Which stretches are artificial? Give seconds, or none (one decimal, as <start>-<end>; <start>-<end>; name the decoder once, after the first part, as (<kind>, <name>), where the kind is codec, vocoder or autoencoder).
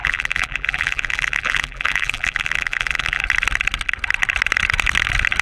0.0-3.2 (vocoder, BigVGAN v2)